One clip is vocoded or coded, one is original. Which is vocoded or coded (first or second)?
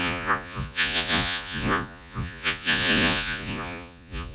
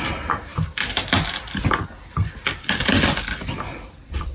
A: first